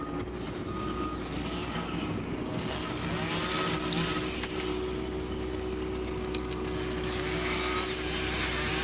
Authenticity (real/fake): real